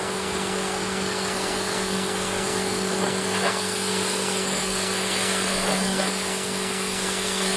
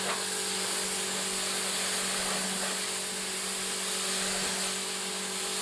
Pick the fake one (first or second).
first